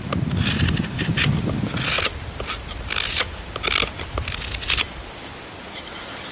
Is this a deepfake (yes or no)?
no